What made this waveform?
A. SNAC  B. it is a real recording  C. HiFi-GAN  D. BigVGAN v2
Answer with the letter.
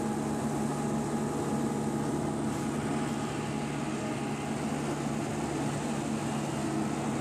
B